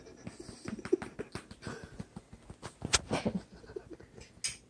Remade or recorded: recorded